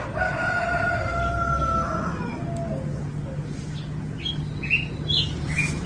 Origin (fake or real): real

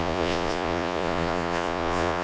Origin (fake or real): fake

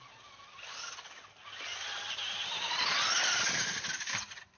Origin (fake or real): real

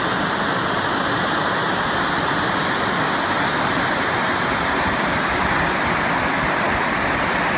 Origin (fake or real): real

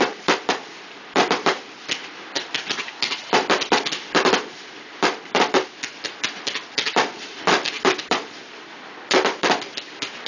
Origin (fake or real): fake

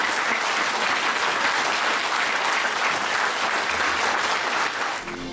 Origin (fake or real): real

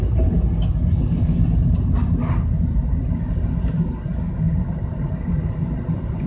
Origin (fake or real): real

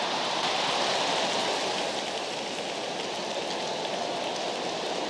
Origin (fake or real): real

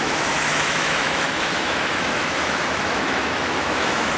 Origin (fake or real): fake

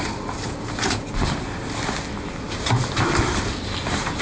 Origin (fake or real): real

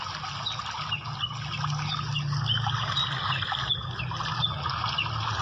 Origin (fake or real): real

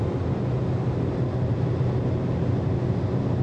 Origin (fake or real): real